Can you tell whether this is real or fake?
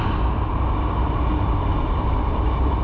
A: real